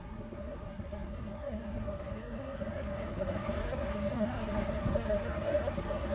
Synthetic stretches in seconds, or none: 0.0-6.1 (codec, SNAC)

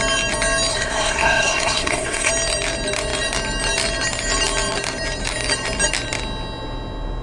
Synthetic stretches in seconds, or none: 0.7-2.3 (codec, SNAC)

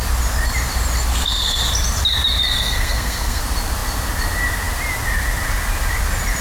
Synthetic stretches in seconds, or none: 1.1-1.7 (codec, SNAC); 2.5-3.4